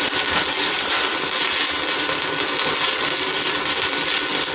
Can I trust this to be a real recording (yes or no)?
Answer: yes